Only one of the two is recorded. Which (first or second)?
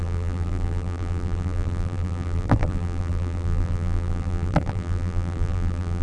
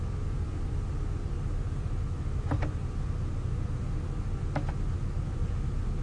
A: second